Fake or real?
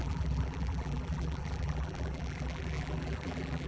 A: fake